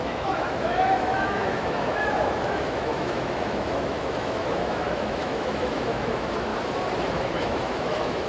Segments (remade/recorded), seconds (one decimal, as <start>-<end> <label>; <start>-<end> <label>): 0.0-6.5 remade; 6.5-7.1 recorded; 7.1-8.3 remade

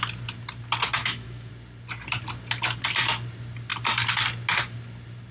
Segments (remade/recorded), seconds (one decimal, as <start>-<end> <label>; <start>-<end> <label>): 0.0-1.0 recorded; 1.0-1.5 remade; 1.5-5.3 recorded

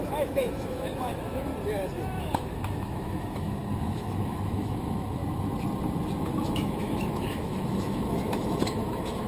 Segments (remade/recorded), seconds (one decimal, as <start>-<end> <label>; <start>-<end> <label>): 0.0-1.5 remade; 1.5-2.2 recorded; 2.2-5.2 remade; 5.2-6.2 recorded; 6.2-9.3 remade